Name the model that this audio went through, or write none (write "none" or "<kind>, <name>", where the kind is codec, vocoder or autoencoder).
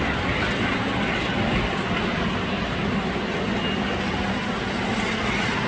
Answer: none